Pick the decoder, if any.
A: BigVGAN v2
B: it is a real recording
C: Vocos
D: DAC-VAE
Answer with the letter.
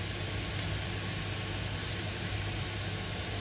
B